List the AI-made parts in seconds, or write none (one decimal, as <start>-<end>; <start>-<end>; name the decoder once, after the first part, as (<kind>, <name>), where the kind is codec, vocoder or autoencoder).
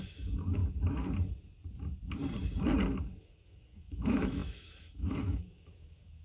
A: 0.0-0.6 (autoencoder, DAC-VAE); 3.2-6.2